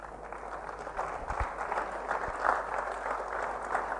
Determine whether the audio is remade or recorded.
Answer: recorded